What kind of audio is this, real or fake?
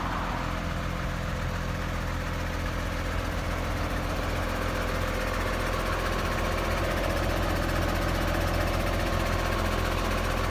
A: real